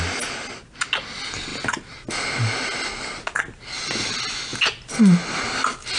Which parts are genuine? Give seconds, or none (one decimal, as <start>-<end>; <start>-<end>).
0.0-6.0